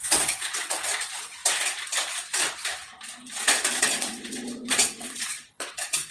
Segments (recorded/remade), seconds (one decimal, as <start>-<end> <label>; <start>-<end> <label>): 0.0-1.4 remade; 1.4-3.8 recorded; 3.8-6.1 remade